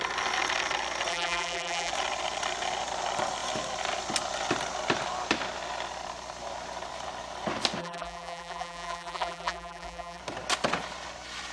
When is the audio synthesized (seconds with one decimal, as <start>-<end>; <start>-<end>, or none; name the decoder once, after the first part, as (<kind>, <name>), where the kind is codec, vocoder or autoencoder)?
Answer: 1.1-1.9 (vocoder, BigVGAN v2); 7.8-10.2